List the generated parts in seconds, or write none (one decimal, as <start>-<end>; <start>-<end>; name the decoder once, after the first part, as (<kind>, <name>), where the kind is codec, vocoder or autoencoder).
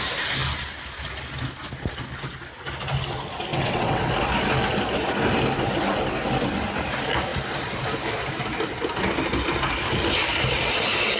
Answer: 3.5-4.1 (vocoder, WaveNeXt)